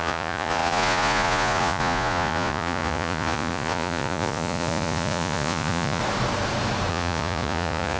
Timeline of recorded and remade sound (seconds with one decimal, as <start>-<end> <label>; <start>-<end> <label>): 0.0-6.0 remade; 6.0-6.9 recorded; 6.9-8.0 remade